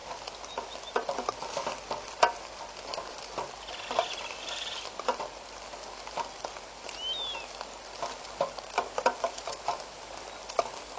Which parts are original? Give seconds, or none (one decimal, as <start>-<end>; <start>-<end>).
0.0-11.0